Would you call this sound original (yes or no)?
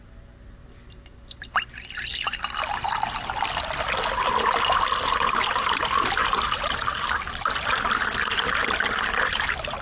yes